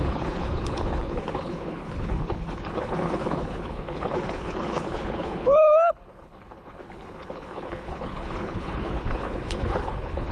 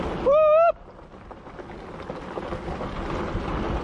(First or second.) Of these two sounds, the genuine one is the second